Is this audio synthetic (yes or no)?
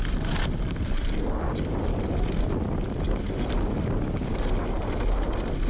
no